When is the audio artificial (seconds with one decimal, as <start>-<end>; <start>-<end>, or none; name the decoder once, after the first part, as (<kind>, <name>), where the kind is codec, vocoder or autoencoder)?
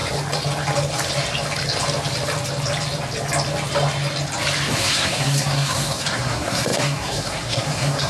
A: 4.7-8.1 (codec, SNAC)